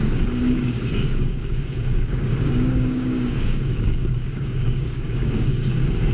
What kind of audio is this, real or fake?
fake